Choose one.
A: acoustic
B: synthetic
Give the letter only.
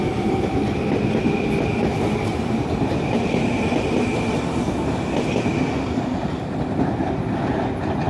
B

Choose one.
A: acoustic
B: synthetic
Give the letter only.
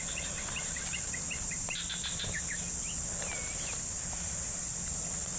A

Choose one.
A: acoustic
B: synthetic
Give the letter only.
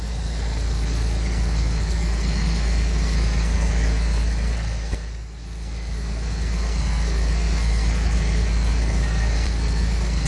B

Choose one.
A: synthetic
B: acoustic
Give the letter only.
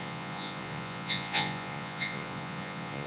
A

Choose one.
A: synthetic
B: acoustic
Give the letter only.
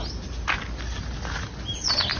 B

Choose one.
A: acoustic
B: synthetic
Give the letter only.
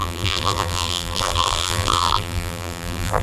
B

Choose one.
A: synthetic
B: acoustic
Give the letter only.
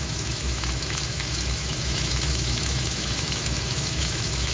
A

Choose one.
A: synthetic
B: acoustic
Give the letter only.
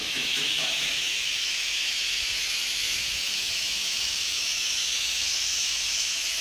A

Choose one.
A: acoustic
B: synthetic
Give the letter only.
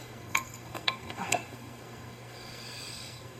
B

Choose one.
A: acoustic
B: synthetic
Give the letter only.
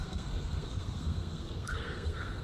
B